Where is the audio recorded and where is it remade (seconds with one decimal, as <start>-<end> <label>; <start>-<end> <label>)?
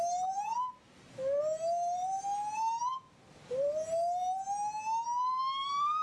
0.0-6.0 recorded